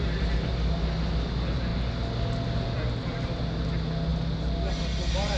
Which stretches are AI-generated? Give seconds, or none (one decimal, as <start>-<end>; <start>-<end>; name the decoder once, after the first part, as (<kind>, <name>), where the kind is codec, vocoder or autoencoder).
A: none